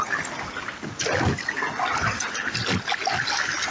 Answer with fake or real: real